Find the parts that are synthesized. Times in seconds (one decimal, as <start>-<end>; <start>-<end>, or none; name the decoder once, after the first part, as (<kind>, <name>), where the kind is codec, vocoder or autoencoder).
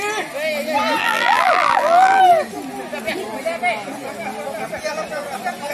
1.0-2.2 (vocoder, BigVGAN v2)